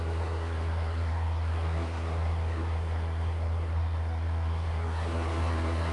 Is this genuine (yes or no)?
no